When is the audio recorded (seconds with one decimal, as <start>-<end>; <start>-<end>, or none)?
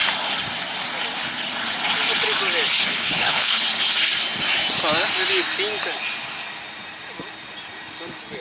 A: 0.0-2.9; 3.6-8.4